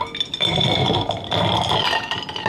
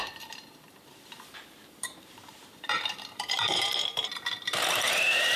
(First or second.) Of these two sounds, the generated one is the second